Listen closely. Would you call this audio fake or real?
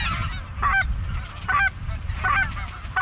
real